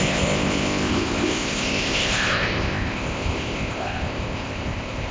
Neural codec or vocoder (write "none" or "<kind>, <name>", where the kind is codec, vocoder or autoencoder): codec, ZipCodec